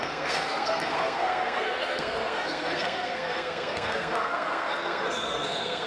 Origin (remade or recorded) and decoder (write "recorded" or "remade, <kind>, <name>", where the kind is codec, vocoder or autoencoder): remade, codec, SNAC